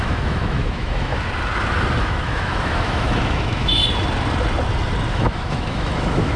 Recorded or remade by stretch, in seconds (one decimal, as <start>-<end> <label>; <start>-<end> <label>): 0.0-1.1 remade; 1.1-2.0 recorded; 2.0-3.8 remade; 3.8-5.1 recorded; 5.1-6.4 remade